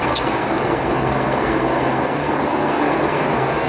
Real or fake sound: fake